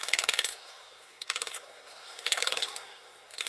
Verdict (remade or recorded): remade